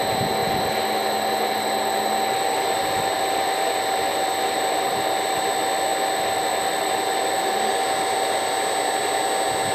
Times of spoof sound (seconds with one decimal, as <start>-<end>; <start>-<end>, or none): 0.4-5.5; 5.9-8.5